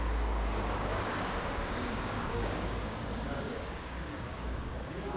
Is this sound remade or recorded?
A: remade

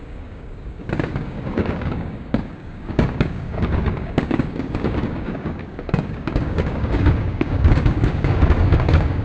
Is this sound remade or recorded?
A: remade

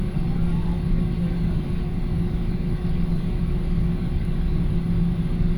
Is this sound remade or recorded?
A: remade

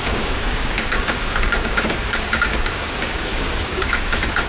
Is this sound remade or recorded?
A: remade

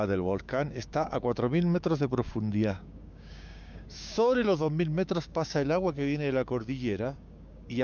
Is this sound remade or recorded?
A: remade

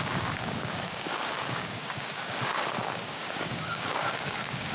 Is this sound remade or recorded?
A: remade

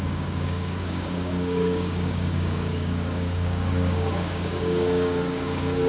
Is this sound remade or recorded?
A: remade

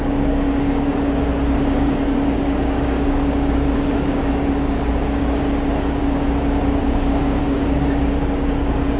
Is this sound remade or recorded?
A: remade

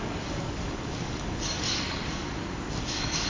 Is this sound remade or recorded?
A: remade